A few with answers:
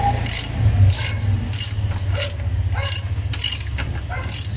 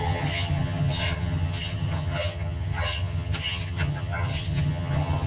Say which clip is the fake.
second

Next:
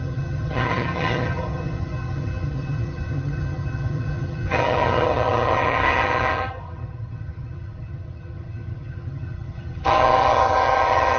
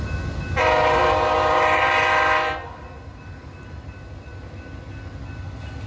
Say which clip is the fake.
first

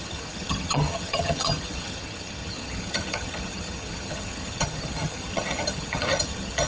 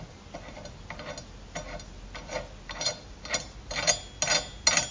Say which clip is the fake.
first